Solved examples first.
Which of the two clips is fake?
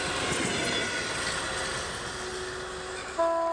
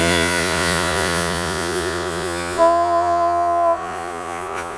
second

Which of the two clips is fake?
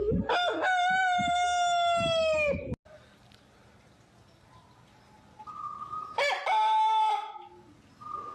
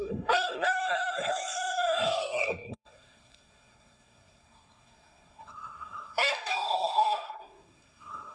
second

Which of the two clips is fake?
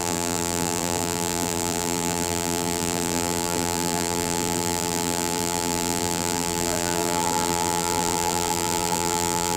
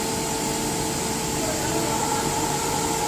first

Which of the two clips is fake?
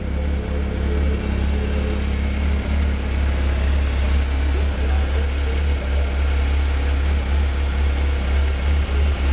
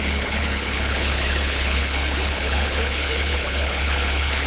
second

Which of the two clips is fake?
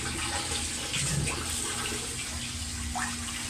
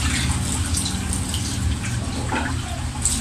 second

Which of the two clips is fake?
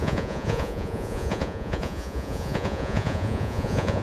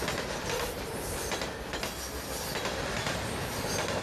first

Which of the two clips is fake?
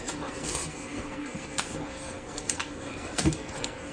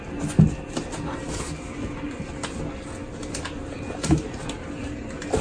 first